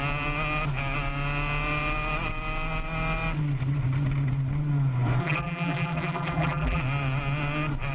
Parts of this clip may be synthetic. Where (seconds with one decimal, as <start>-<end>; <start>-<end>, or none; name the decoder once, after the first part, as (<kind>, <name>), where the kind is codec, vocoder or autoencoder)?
5.2-6.8 (vocoder, BigVGAN v2)